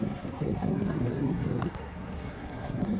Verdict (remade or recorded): remade